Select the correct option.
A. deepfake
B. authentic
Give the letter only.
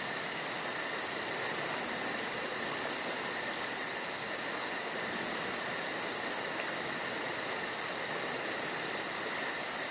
B